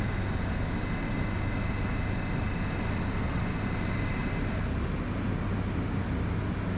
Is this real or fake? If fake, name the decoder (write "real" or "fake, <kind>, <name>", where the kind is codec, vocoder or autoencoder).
real